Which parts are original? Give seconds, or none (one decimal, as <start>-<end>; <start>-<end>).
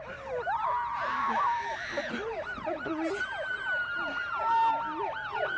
0.0-1.0; 4.4-5.6